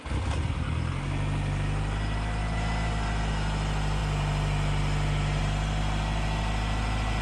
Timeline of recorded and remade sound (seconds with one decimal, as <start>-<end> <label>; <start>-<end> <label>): 0.0-7.2 recorded